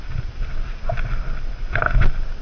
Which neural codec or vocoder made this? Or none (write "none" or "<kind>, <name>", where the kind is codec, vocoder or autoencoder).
none